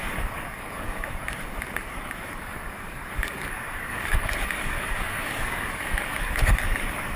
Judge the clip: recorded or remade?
remade